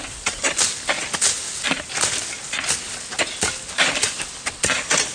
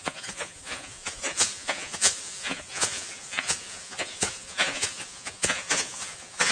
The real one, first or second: first